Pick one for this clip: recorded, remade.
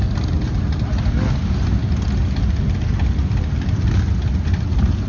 recorded